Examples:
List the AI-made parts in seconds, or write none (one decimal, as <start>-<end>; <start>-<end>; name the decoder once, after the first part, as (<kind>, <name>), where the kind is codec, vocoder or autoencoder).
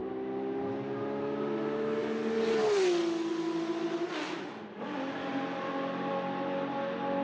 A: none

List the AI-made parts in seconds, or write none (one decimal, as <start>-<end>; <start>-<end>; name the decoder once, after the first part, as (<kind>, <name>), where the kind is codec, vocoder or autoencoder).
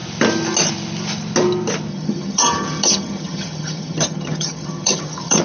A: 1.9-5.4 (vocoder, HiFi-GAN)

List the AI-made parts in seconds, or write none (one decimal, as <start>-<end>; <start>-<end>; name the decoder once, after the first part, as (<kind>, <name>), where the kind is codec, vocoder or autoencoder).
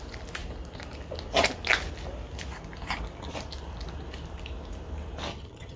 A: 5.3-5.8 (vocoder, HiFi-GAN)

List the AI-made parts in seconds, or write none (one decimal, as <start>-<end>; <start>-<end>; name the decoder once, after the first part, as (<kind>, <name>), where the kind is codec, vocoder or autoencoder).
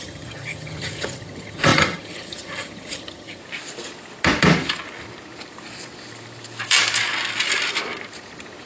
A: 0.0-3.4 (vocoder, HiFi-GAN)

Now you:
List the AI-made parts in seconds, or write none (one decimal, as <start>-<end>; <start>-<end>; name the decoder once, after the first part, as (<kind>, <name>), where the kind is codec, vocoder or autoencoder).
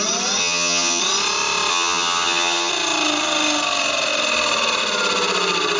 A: 0.4-1.0 (vocoder, HiFi-GAN); 1.7-2.7